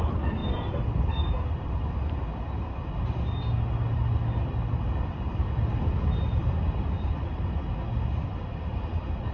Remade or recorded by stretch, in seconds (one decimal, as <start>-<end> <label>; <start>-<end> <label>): 0.0-9.3 recorded